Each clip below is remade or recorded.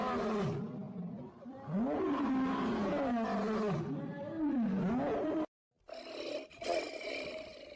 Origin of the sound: recorded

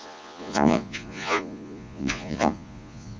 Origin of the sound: remade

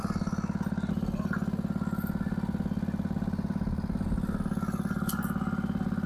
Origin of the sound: recorded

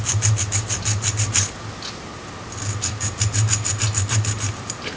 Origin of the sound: recorded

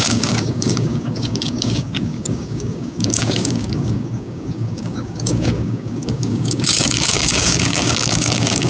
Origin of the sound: remade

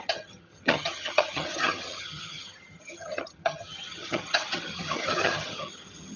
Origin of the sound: remade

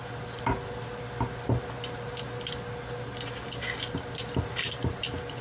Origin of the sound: recorded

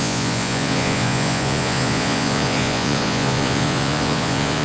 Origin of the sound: remade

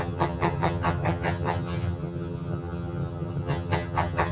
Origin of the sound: remade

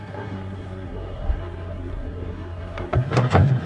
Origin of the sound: remade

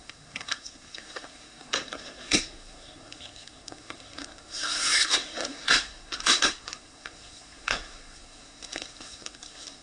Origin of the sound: remade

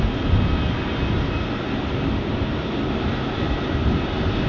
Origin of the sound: recorded